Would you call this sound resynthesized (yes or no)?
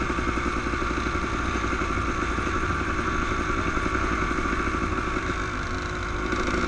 no